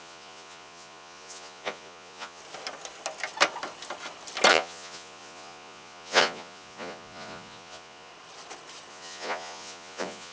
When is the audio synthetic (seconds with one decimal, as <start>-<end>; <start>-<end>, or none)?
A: 0.0-2.4; 4.5-8.1; 8.9-10.3

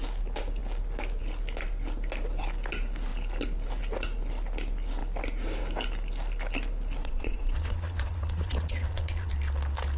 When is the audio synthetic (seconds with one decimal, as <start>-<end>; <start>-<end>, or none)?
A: 7.0-9.3